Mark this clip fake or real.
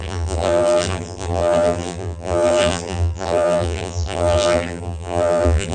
fake